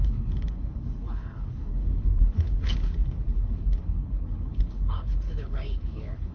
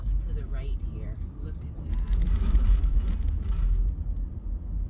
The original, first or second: second